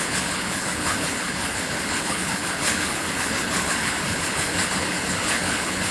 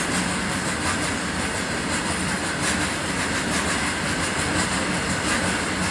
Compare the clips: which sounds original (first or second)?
second